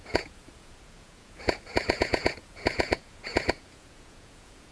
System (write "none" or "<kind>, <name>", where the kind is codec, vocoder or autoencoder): vocoder, Vocos